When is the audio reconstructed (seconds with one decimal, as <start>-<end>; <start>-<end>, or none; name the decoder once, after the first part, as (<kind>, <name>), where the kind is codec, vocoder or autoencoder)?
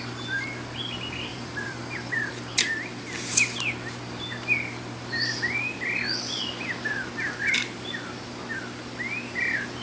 1.3-2.3 (vocoder, BigVGAN v2)